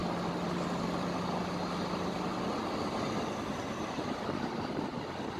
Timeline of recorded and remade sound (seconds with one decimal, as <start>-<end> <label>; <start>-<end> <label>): 0.0-5.4 recorded